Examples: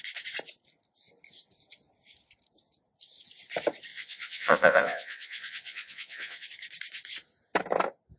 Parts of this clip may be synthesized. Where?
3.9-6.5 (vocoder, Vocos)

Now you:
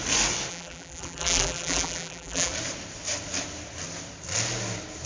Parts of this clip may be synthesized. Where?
0.5-2.5 (vocoder, BigVGAN v2)